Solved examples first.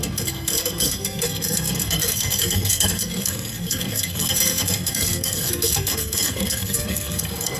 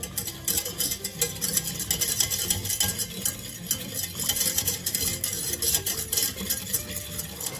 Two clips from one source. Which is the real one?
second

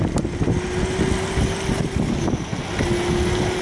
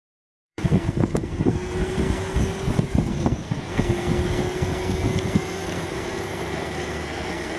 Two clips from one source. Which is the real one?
first